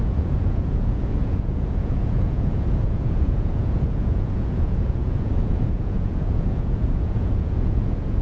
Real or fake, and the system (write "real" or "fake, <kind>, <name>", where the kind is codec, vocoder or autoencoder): fake, vocoder, Vocos